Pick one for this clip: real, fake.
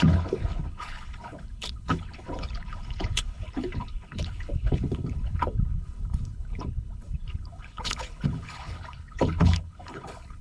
fake